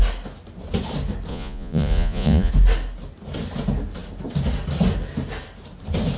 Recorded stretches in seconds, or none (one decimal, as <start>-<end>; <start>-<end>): 0.0-1.3; 2.5-6.2